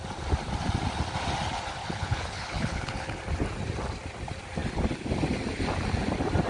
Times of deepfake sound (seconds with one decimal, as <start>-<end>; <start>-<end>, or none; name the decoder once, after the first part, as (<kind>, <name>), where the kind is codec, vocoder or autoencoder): 1.8-3.2 (codec, HILCodec)